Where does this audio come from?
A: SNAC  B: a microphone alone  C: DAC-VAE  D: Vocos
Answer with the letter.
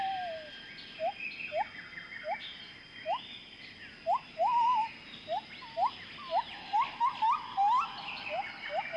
B